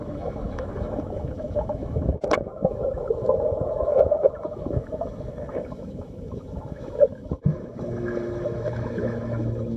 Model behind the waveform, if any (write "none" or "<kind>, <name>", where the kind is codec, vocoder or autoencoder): autoencoder, DAC-VAE